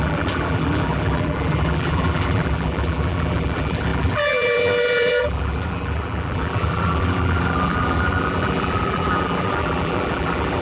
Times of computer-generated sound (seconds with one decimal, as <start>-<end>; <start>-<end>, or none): 0.0-10.6